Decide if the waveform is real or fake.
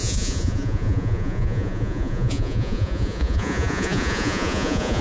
fake